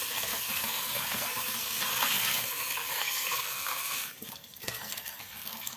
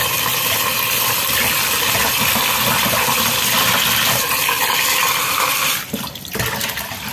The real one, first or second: second